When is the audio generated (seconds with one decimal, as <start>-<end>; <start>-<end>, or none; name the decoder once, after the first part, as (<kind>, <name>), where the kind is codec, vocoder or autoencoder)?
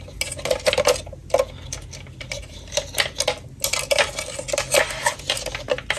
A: none